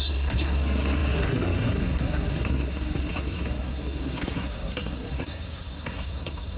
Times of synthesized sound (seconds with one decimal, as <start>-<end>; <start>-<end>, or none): 0.0-6.6